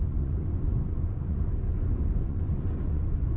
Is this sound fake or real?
fake